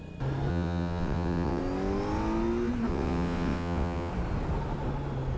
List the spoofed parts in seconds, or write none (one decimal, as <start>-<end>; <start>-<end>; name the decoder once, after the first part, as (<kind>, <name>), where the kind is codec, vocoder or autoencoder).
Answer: 0.5-1.6 (vocoder, WaveNeXt); 2.9-4.1